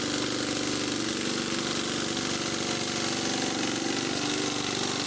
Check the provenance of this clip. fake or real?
real